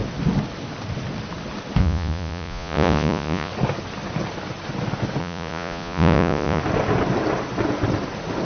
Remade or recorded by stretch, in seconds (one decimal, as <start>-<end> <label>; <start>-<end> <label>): 0.0-1.8 recorded; 1.8-3.5 remade; 3.5-5.2 recorded; 5.2-6.6 remade; 6.6-8.4 recorded